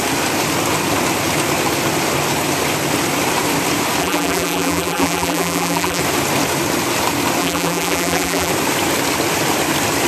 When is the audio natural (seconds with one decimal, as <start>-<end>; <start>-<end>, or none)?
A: 0.0-4.0; 6.0-7.4; 8.5-10.1